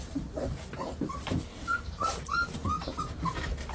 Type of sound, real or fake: real